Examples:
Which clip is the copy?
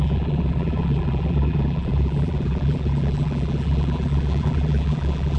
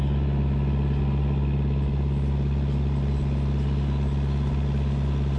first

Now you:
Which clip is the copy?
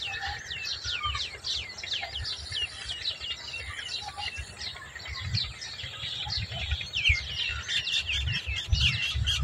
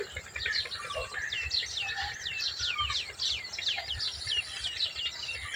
second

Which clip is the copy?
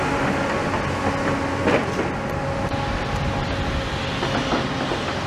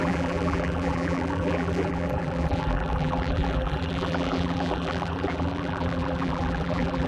second